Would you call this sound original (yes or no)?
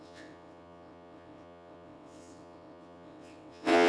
no